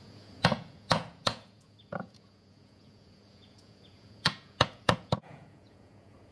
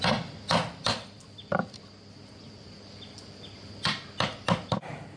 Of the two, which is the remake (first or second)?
first